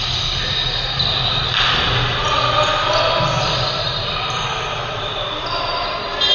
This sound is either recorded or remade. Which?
remade